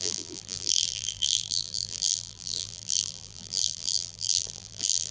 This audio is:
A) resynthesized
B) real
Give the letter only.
A